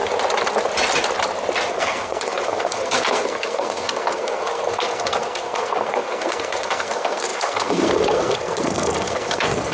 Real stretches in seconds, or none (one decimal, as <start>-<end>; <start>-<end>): 0.0-1.7